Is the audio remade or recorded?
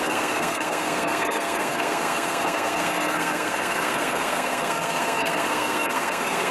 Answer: remade